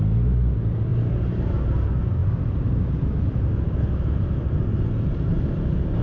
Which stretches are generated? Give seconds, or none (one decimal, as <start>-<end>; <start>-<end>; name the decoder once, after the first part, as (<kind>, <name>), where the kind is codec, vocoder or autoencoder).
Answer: none